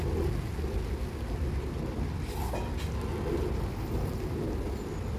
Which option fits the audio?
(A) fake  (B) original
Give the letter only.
B